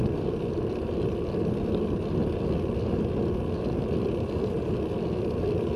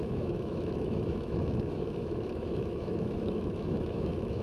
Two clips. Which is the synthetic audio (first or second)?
second